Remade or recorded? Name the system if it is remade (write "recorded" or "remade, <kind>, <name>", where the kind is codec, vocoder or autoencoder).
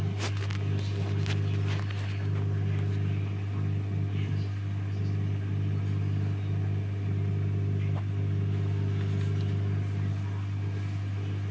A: recorded